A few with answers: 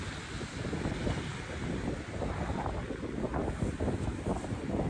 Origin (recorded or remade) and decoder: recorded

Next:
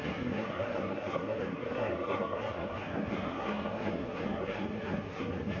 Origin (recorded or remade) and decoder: remade, codec, SNAC